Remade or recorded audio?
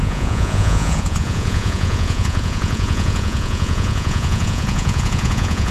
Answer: remade